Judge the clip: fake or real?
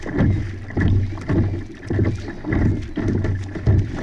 real